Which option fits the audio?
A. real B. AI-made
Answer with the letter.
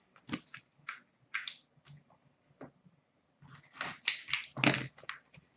A